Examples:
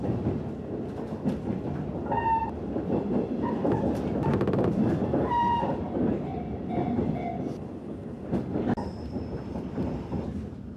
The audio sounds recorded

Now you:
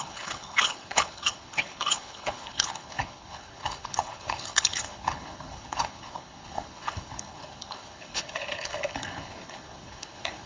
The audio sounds remade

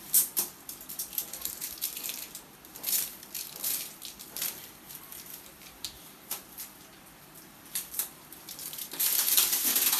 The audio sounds remade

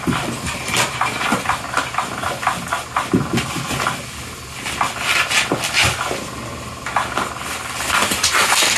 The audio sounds recorded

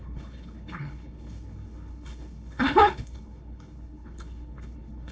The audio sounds remade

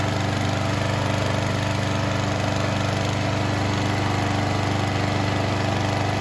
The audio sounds recorded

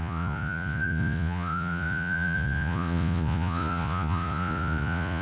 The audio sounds remade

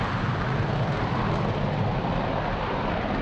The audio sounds recorded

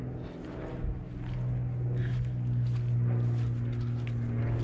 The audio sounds recorded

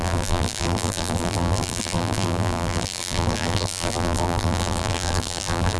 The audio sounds remade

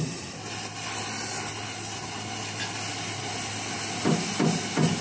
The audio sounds recorded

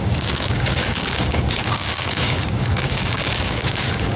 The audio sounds remade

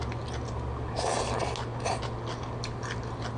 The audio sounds recorded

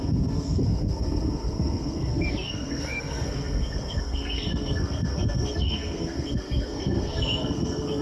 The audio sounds remade